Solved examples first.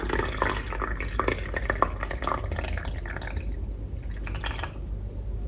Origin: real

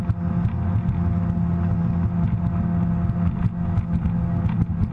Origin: real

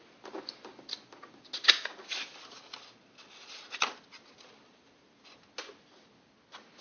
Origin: real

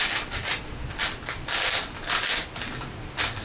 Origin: real